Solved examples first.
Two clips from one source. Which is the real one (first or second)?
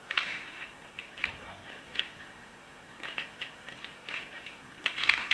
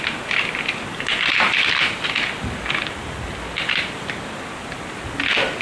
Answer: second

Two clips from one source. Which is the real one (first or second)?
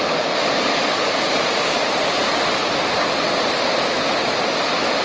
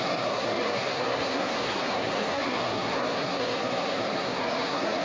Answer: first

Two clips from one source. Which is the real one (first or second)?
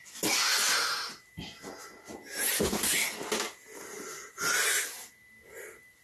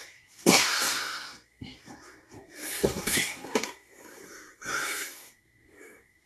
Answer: first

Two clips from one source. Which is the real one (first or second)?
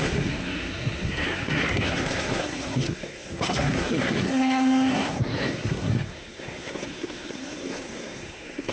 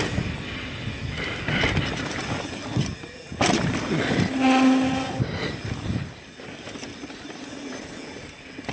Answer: second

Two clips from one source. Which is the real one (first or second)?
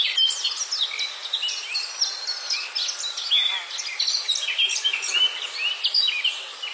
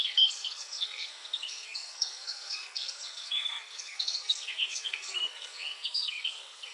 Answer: first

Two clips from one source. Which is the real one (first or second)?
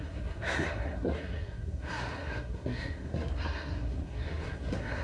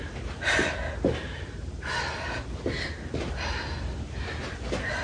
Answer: second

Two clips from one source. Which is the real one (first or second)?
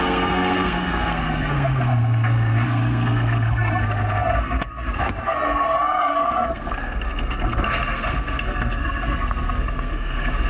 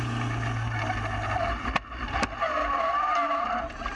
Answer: second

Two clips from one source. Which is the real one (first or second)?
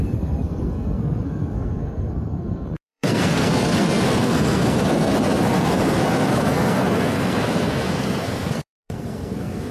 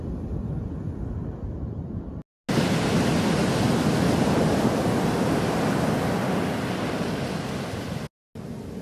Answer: second